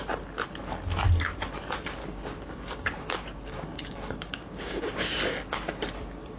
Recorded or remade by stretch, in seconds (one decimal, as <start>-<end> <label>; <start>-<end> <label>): 0.0-2.0 recorded; 2.0-5.8 remade; 5.8-6.4 recorded